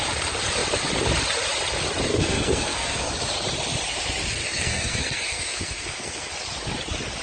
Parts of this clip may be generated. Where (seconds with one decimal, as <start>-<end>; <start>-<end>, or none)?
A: 2.1-3.1; 4.4-6.3